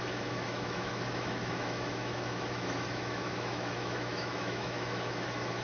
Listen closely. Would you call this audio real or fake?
fake